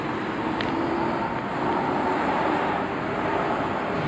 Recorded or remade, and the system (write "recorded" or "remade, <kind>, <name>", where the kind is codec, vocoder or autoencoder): recorded